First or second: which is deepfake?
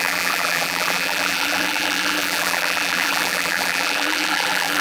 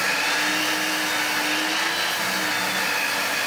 first